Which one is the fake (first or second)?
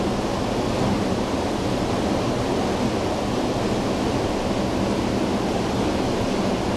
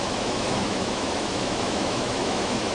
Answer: second